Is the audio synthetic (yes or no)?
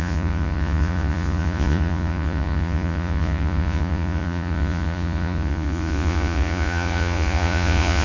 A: yes